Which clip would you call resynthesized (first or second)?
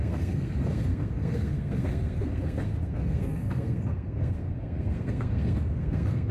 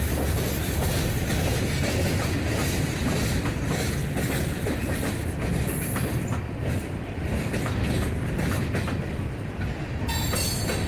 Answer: first